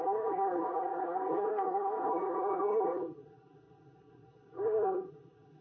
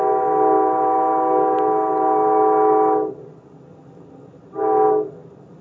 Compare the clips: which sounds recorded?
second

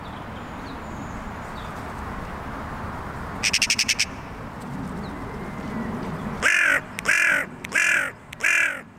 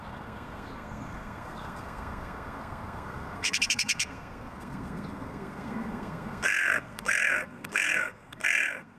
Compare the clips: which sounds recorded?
first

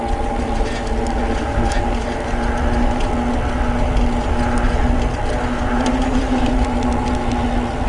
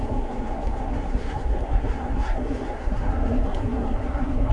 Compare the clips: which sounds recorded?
first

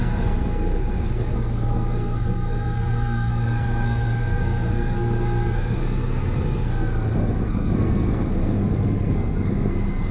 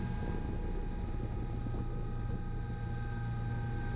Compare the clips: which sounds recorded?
second